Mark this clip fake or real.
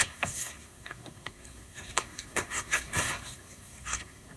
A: fake